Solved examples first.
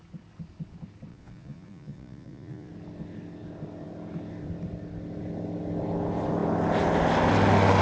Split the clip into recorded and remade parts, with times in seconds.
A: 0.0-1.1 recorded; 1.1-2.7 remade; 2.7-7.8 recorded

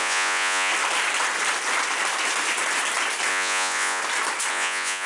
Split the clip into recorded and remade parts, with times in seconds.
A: 0.0-0.7 remade; 0.7-3.3 recorded; 3.3-4.0 remade; 4.0-4.5 recorded; 4.5-5.1 remade

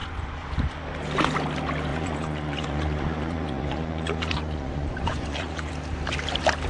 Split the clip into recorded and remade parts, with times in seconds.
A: 0.0-0.8 remade; 0.8-1.9 recorded; 1.9-5.7 remade; 5.7-6.7 recorded

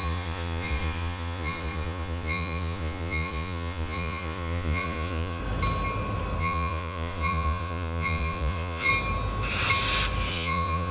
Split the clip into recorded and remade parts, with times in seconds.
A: 0.0-5.4 remade; 5.4-6.4 recorded; 6.4-8.9 remade; 8.9-10.3 recorded; 10.3-10.9 remade

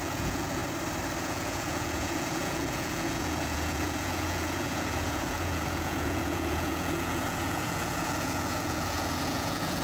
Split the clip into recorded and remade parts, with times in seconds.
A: 0.0-0.6 remade; 0.6-1.2 recorded; 1.2-9.8 remade

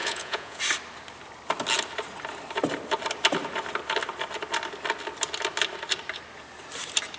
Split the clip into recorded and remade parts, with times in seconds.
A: 0.0-0.6 remade; 0.6-7.2 recorded

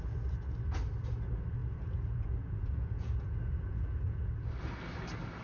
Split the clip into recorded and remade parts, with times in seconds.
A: 0.0-1.6 recorded; 1.6-4.3 remade; 4.3-5.4 recorded